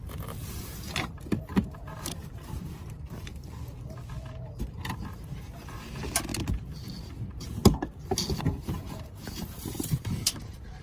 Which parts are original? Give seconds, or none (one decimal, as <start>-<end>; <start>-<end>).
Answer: 3.3-5.7; 6.3-8.4